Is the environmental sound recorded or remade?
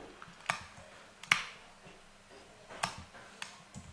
recorded